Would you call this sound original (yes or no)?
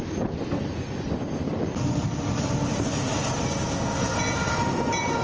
yes